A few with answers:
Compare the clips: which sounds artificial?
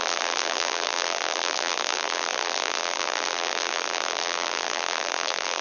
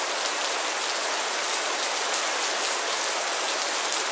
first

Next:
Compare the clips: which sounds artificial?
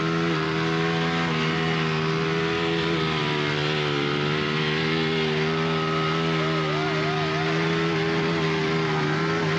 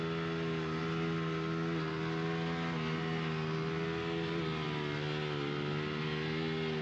first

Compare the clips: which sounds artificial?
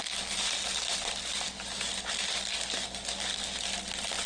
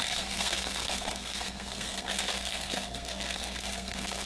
second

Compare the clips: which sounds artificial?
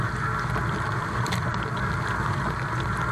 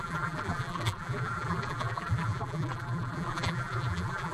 second